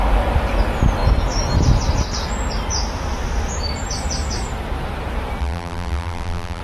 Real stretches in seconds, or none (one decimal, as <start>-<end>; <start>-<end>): 0.0-5.4